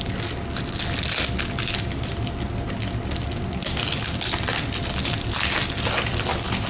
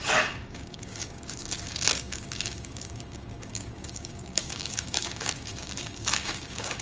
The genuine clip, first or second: first